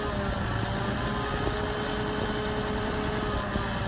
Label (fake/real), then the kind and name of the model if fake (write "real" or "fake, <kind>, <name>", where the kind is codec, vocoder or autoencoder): real